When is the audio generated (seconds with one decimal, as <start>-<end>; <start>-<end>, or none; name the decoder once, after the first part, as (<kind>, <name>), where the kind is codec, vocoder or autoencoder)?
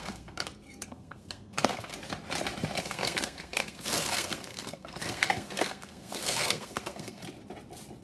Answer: 0.0-1.9 (codec, SNAC); 2.8-7.2